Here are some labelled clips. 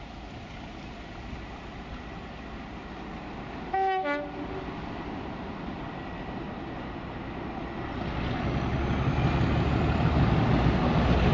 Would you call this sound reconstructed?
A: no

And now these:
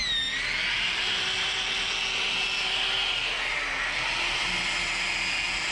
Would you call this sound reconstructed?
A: no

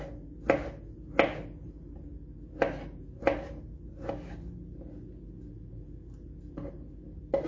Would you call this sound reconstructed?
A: no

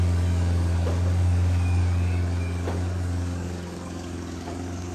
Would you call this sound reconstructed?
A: yes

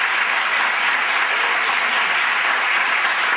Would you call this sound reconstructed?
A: no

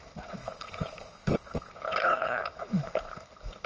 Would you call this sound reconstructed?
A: yes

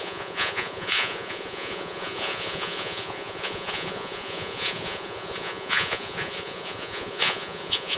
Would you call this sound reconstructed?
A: yes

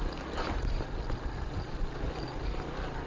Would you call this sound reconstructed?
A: no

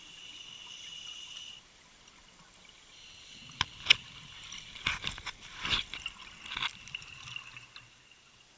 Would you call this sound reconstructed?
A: no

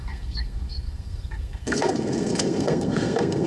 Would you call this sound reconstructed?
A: yes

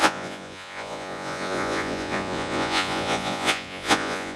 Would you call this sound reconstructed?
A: yes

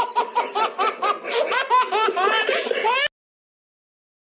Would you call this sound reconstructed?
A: no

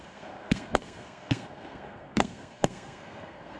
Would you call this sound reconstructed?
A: yes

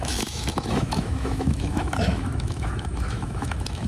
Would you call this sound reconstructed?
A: yes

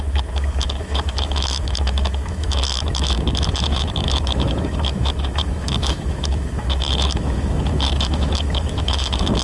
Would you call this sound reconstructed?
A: yes